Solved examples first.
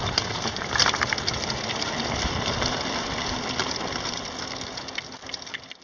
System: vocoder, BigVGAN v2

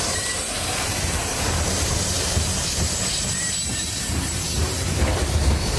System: vocoder, BigVGAN v2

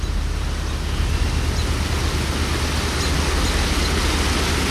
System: none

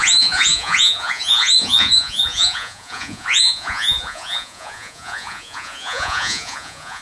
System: vocoder, Vocos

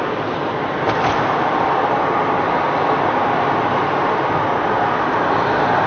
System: none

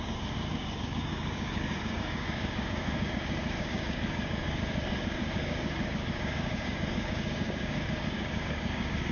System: codec, DAC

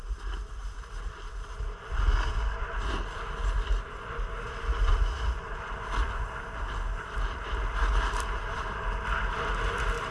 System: none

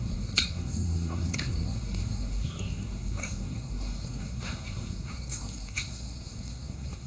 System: codec, SNAC